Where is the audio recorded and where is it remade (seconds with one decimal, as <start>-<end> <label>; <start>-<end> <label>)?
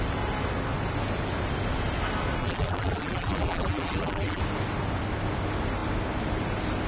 0.0-2.4 recorded; 2.4-4.4 remade; 4.4-6.9 recorded